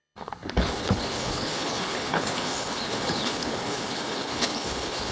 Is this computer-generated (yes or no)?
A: yes